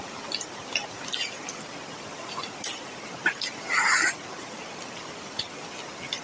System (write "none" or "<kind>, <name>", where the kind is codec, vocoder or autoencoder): none